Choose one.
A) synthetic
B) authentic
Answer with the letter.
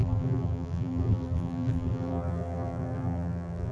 A